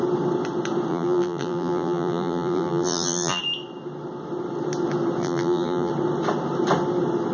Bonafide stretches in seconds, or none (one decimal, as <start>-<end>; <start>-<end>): 0.0-0.9; 3.4-5.2; 5.9-7.3